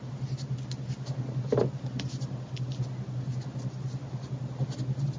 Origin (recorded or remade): recorded